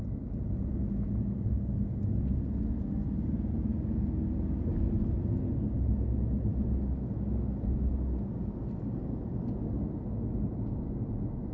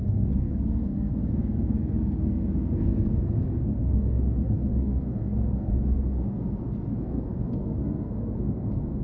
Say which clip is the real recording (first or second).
first